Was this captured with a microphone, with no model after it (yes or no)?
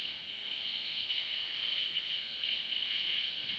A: no